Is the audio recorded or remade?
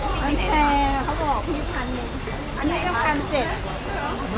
recorded